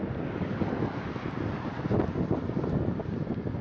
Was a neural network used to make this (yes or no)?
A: no